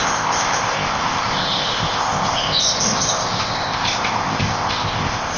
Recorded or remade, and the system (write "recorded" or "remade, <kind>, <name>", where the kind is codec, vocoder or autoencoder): remade, codec, ZipCodec